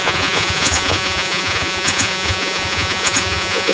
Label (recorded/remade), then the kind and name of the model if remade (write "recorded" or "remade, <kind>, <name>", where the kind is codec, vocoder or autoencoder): remade, vocoder, Vocos